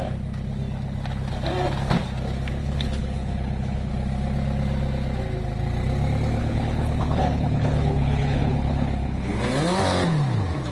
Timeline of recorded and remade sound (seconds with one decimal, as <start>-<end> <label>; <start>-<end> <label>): 0.0-2.6 recorded; 2.6-3.9 remade; 3.9-6.4 recorded; 6.4-9.4 remade; 9.4-10.7 recorded